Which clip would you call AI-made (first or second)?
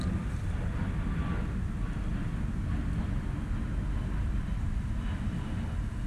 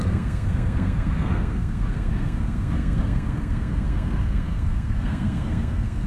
second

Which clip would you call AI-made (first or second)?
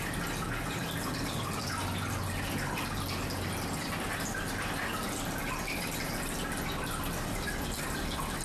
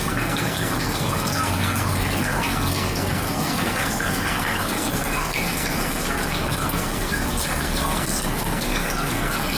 second